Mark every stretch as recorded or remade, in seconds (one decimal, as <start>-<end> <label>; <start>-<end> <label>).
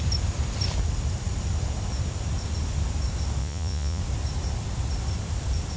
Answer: 0.0-3.4 recorded; 3.4-4.0 remade; 4.0-5.8 recorded